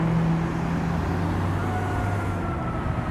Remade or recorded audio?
recorded